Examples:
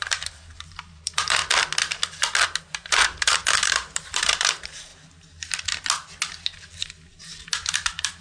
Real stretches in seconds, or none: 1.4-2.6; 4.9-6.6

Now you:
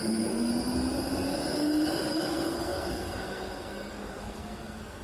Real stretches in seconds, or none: 0.5-2.1